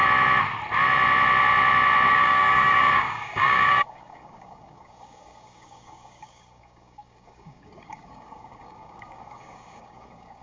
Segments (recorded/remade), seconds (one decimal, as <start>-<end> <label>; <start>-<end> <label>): 0.0-2.1 recorded; 2.1-10.4 remade